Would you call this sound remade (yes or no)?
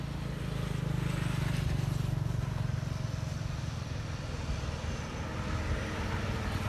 no